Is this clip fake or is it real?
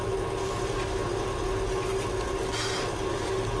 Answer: real